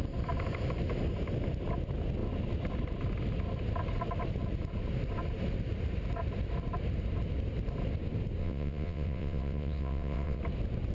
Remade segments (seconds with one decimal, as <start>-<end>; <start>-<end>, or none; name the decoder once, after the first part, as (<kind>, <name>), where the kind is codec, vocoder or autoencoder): 8.4-10.4 (vocoder, WaveNeXt)